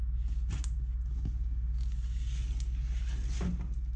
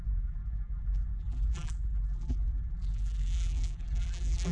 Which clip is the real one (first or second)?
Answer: first